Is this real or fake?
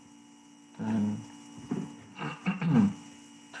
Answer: real